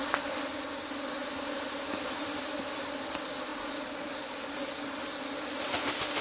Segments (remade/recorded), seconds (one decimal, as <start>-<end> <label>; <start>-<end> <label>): 0.0-3.5 remade; 3.5-5.6 recorded; 5.6-6.2 remade